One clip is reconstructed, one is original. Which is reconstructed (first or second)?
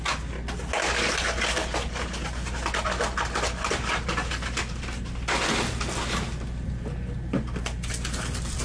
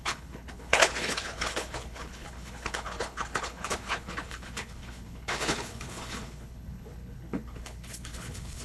second